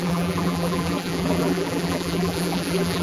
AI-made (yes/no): yes